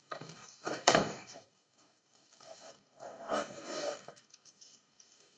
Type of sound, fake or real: fake